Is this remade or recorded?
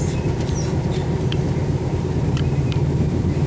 remade